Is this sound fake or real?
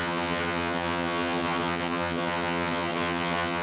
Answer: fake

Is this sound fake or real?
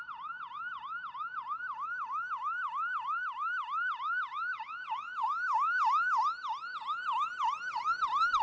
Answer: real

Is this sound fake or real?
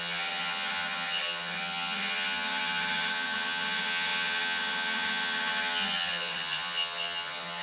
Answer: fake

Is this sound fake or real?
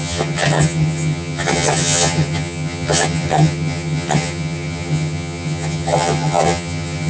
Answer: fake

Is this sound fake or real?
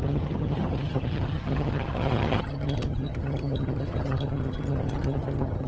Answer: fake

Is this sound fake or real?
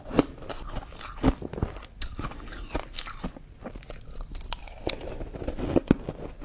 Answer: real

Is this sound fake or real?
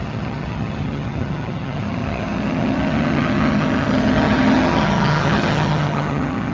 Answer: fake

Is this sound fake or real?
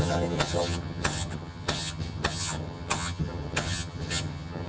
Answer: fake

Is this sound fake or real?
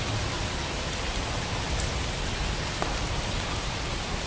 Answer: real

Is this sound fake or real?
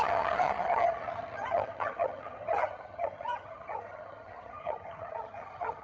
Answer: fake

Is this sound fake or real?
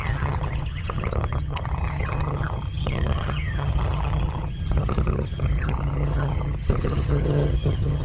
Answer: fake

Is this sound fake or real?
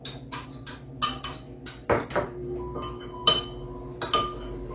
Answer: real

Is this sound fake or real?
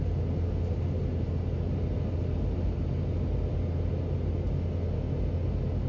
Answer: real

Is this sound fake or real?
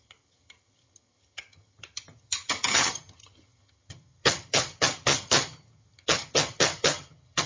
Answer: fake